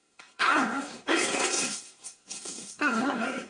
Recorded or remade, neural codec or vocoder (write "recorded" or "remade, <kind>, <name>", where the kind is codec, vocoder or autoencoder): remade, codec, SNAC